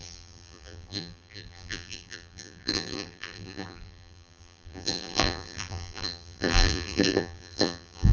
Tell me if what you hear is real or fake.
fake